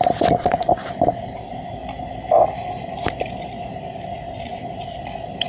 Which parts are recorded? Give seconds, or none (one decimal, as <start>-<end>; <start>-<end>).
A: 0.0-5.5